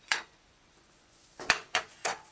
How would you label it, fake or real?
fake